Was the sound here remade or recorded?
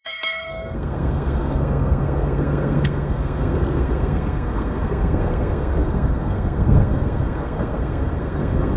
remade